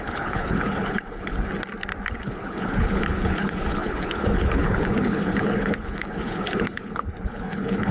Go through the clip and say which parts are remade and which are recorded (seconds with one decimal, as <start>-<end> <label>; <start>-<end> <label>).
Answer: 0.0-1.5 remade; 1.5-2.2 recorded; 2.2-7.9 remade